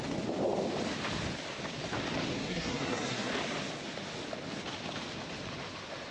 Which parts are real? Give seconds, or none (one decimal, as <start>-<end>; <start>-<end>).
0.0-2.4; 3.3-6.1